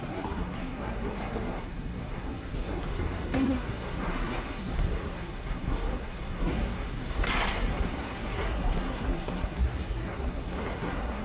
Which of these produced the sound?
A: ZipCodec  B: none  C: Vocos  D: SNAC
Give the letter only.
D